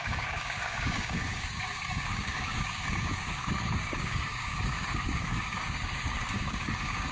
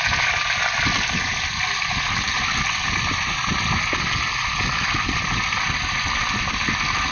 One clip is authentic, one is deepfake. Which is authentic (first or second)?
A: second